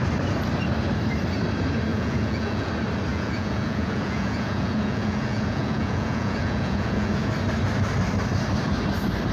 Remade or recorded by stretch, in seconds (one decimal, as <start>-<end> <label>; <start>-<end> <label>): 0.0-1.9 recorded; 1.9-2.7 remade; 2.7-3.1 recorded; 3.1-7.3 remade; 7.3-9.3 recorded